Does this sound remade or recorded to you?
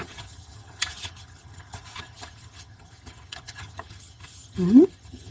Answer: remade